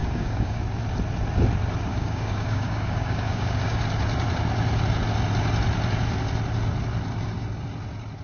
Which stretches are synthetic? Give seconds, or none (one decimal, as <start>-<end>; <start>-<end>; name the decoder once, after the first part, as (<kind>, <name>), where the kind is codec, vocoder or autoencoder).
0.0-0.6 (codec, DAC); 1.9-3.8